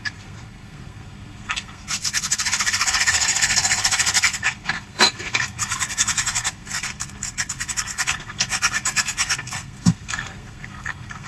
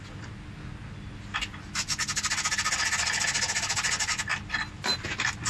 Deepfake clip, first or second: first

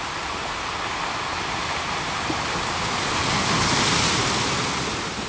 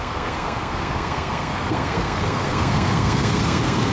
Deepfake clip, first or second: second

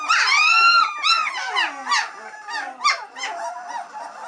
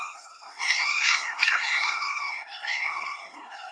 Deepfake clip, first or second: second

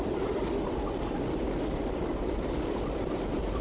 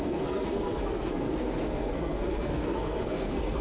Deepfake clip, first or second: second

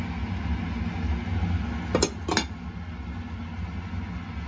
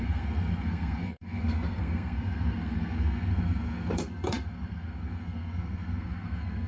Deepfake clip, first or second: second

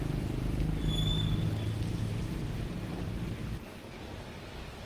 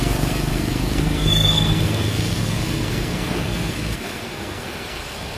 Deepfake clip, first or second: second